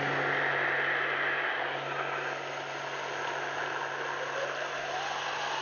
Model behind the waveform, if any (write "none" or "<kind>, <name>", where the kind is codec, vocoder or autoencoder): none